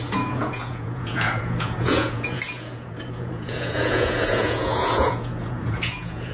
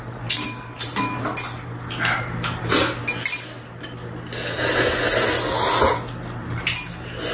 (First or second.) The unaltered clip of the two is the second